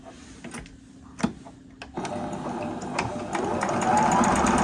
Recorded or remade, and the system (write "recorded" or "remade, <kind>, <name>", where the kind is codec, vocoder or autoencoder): recorded